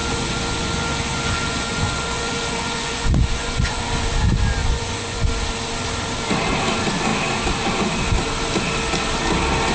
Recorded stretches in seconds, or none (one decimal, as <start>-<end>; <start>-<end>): 3.8-4.6; 5.3-9.7